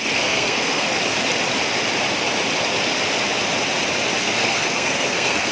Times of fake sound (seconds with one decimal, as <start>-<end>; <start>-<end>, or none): 0.0-0.9; 4.2-5.5